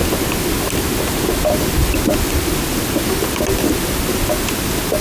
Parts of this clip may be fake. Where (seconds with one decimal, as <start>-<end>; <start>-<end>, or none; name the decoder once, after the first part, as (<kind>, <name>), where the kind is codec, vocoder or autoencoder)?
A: none

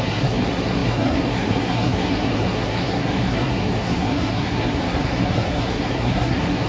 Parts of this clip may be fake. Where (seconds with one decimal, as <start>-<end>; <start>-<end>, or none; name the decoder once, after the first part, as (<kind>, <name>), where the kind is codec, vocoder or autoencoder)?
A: 0.0-6.7 (codec, SNAC)